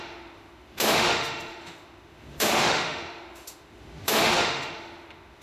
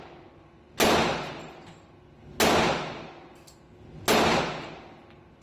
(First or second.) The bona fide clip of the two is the second